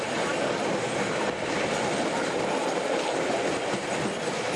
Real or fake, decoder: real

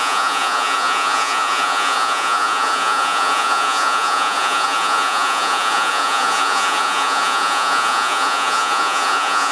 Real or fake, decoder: fake, vocoder, Vocos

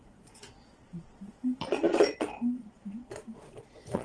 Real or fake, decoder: fake, vocoder, Vocos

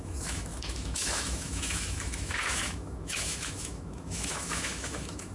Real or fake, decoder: fake, autoencoder, DAC-VAE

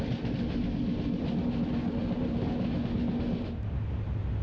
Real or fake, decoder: real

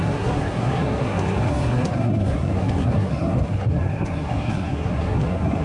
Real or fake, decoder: fake, codec, SNAC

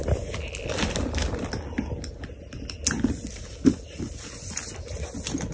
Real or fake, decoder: real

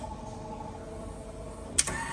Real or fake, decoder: real